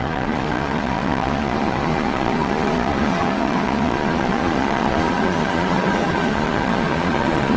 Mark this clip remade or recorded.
remade